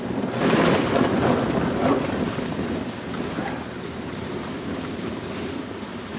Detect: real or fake real